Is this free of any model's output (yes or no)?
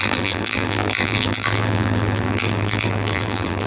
no